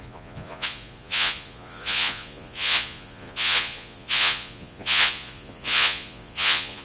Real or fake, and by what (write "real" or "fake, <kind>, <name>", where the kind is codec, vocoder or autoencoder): fake, vocoder, Vocos